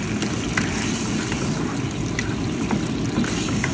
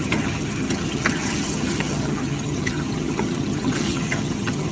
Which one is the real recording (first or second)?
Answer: first